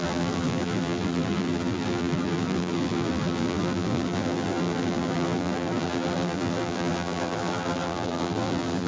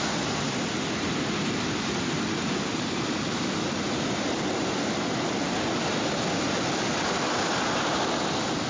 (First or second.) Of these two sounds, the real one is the second